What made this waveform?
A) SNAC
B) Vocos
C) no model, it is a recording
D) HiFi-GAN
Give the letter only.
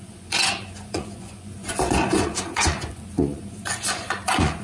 B